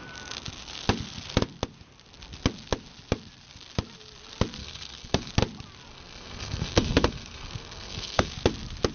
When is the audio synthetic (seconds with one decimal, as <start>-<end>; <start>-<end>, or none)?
4.6-5.3; 5.9-8.3